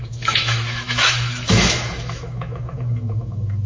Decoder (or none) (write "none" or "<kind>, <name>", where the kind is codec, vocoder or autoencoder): autoencoder, DAC-VAE